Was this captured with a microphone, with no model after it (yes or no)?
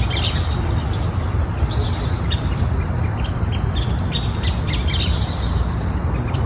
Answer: yes